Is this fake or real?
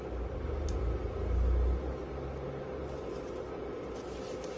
real